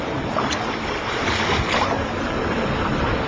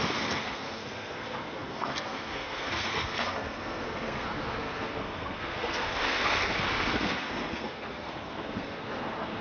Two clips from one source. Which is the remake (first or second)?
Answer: second